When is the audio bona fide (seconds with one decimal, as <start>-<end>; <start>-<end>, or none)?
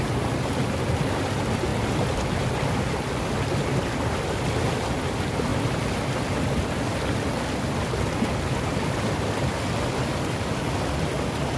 0.0-11.6